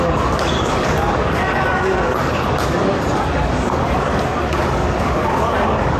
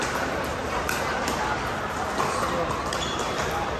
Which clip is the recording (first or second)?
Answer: second